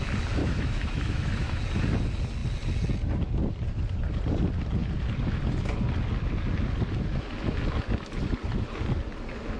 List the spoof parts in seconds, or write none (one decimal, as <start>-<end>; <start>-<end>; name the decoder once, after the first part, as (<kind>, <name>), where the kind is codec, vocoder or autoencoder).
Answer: 0.4-1.6 (autoencoder, DAC-VAE)